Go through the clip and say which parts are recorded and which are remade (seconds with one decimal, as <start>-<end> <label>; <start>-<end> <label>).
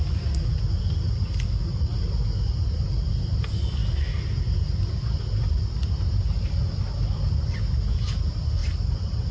0.0-9.3 recorded